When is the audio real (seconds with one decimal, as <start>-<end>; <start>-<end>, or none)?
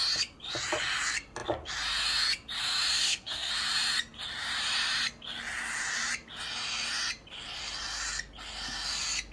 0.0-3.0; 3.5-9.3